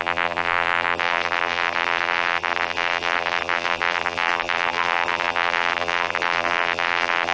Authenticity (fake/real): fake